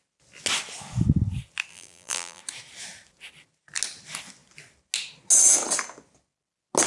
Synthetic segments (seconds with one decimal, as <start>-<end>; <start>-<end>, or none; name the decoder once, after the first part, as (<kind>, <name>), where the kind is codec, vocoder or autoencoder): 1.7-2.4 (vocoder, BigVGAN v2)